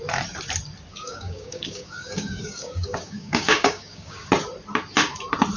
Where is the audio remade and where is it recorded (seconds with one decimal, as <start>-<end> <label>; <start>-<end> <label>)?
0.0-0.9 recorded; 0.9-4.3 remade; 4.3-5.6 recorded